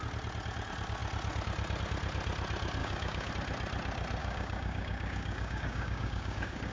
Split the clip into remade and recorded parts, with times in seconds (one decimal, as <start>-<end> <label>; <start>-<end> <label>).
0.0-2.8 recorded; 2.8-3.3 remade; 3.3-4.2 recorded; 4.2-6.7 remade